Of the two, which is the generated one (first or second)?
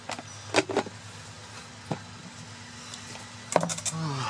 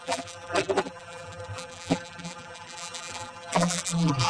second